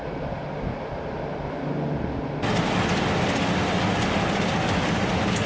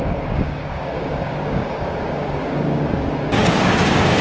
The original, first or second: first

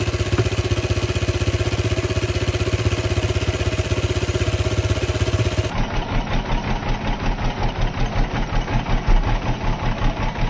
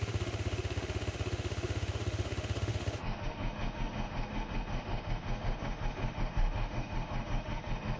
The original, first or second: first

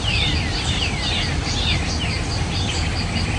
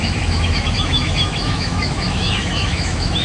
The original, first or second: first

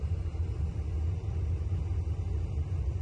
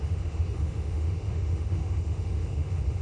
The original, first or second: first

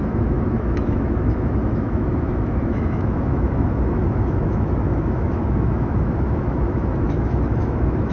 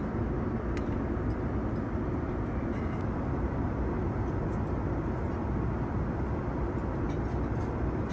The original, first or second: second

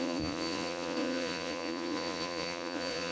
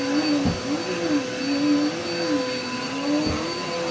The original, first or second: second